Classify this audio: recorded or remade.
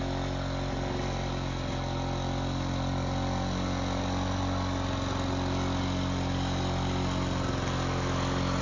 recorded